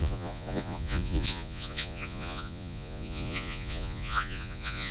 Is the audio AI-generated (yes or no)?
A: yes